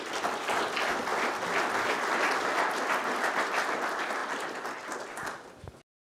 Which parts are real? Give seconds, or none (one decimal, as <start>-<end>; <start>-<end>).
0.0-6.1